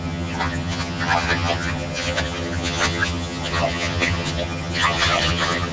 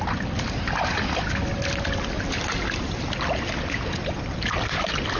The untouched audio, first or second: second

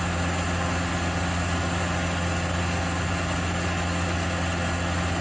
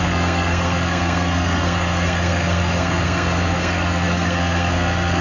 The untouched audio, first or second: first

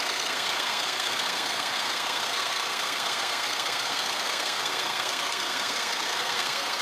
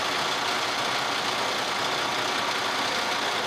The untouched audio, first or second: second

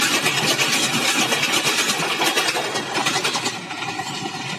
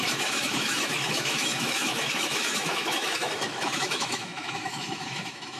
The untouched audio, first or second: first